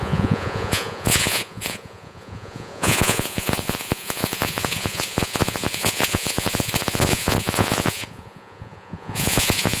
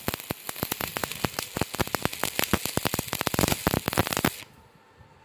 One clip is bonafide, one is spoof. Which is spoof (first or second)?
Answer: first